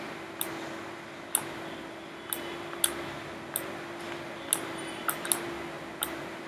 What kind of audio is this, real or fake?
real